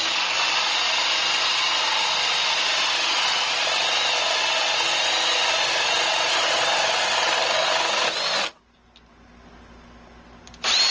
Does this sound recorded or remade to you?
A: recorded